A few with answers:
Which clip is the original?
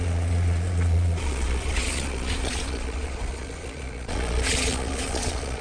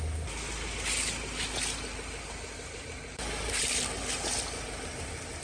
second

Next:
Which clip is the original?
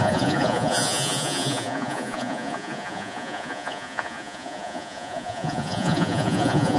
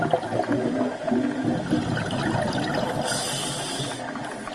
second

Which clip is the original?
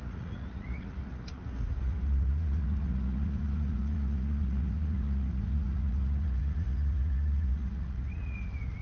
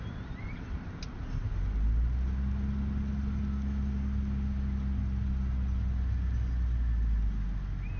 second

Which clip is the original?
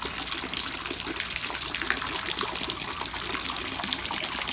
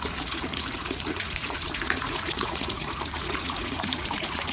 first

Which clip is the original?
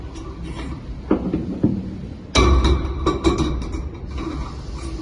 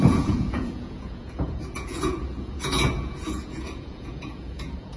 first